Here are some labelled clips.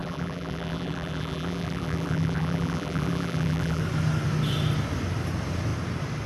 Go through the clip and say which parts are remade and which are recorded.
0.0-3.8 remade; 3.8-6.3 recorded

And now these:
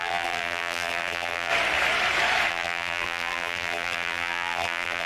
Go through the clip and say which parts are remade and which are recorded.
0.0-1.5 remade; 1.5-2.5 recorded; 2.5-5.1 remade

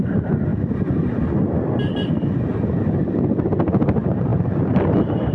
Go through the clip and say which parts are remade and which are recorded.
0.0-0.5 remade; 0.5-3.7 recorded; 3.7-5.3 remade

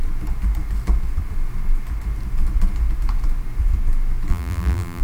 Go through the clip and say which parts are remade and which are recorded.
0.0-4.3 recorded; 4.3-5.0 remade